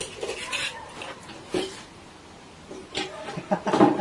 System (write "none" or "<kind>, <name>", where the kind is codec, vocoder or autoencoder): vocoder, BigVGAN v2